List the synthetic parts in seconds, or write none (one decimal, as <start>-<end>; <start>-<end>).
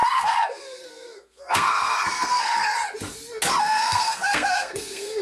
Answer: 0.0-2.6; 3.6-5.2